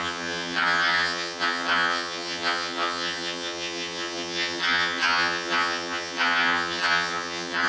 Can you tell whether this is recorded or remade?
remade